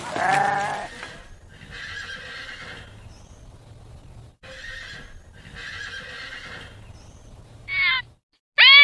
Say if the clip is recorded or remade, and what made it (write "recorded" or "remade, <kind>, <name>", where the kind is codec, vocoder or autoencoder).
recorded